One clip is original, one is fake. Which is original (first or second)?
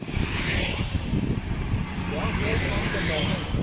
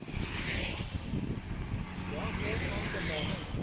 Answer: second